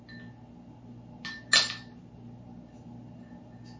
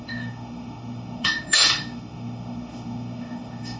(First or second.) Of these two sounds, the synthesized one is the second